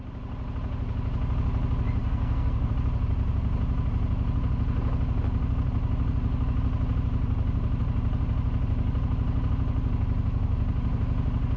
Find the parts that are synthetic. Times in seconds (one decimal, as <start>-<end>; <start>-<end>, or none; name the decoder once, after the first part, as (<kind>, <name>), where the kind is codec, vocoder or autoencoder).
2.0-2.7 (codec, SNAC)